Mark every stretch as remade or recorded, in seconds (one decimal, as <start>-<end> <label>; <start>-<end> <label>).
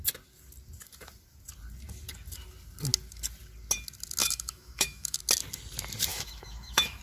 0.0-4.2 recorded; 4.2-5.2 remade; 5.2-6.1 recorded; 6.1-7.0 remade